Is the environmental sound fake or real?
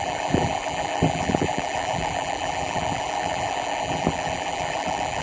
fake